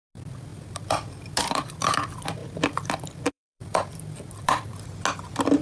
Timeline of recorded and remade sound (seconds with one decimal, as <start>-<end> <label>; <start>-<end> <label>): 0.0-4.7 remade; 4.7-5.6 recorded